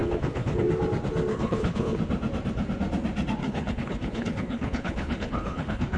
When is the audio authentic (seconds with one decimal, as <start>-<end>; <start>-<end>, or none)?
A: 0.7-1.3; 2.0-3.4